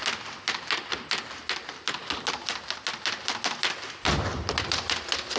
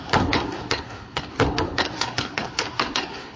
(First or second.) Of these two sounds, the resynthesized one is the second